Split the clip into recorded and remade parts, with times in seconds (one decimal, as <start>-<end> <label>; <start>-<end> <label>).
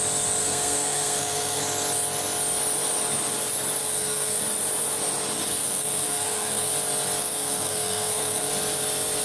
0.0-0.4 recorded; 0.4-1.6 remade; 1.6-3.8 recorded; 3.8-4.4 remade; 4.4-5.6 recorded; 5.6-6.7 remade; 6.7-7.2 recorded; 7.2-8.5 remade; 8.5-9.2 recorded